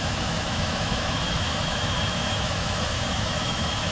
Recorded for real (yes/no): no